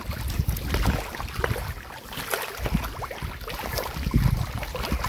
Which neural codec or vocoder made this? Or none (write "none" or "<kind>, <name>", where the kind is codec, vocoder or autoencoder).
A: none